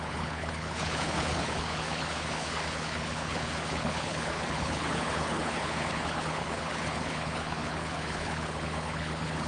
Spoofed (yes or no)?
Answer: yes